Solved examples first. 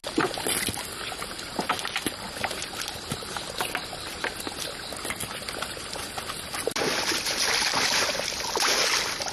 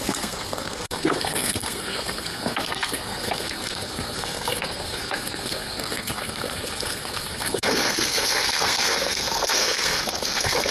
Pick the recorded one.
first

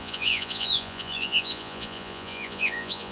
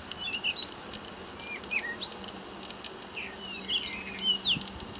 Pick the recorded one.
second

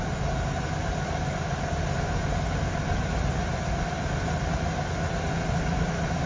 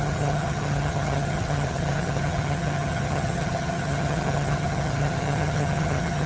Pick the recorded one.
first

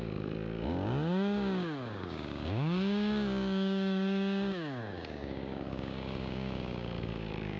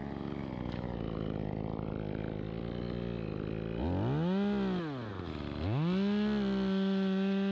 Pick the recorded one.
second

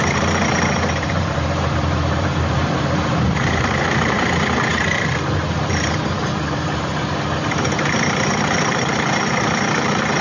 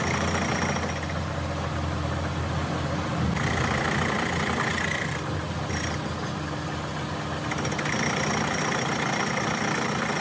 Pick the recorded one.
second